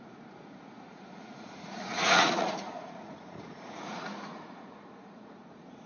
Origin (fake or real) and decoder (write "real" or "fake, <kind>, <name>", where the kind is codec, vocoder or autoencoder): fake, vocoder, Vocos